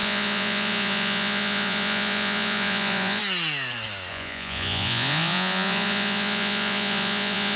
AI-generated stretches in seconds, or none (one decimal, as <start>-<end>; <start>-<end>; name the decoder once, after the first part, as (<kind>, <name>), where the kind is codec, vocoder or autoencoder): 0.0-3.2 (vocoder, Vocos); 4.1-7.6